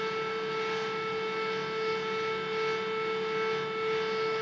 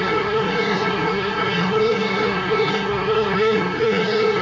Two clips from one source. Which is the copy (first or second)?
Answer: second